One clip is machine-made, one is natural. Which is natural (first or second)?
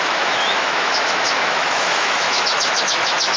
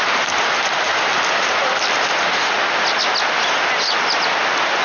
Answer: second